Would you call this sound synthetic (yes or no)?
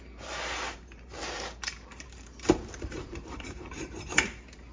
yes